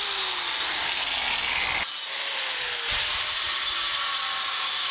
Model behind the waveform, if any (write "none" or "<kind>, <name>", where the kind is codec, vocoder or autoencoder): none